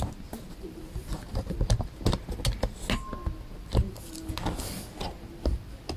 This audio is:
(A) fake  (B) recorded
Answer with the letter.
B